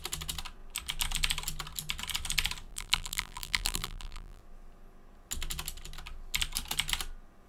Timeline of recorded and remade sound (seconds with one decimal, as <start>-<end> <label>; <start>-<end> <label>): 0.0-2.7 recorded; 2.7-4.4 remade; 4.4-7.5 recorded